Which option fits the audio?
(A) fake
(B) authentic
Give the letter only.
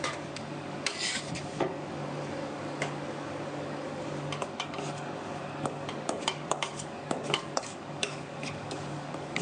A